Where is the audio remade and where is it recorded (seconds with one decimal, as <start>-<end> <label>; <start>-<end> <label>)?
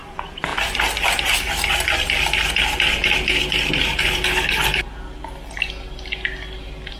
0.0-7.0 recorded